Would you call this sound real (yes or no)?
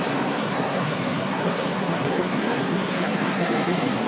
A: no